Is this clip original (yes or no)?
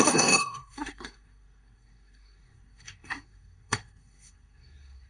no